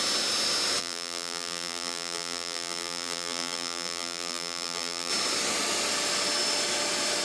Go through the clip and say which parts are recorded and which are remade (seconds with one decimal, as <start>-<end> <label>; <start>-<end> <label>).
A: 0.0-0.8 recorded; 0.8-5.1 remade; 5.1-7.2 recorded